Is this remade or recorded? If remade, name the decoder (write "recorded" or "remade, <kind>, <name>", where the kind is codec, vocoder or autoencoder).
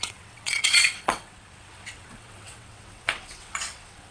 remade, vocoder, WaveNeXt